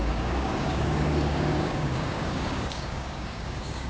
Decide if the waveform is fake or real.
fake